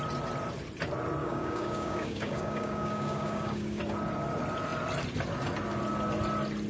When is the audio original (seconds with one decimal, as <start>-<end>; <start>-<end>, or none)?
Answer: 0.0-1.2; 3.8-6.7